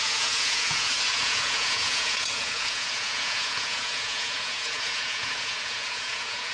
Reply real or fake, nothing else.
fake